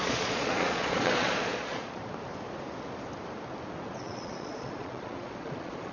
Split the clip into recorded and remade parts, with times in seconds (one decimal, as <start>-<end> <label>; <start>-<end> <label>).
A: 0.0-2.0 remade; 2.0-3.9 recorded; 3.9-5.9 remade